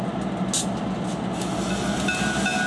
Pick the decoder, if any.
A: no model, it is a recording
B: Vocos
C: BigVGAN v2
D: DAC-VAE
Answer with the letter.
A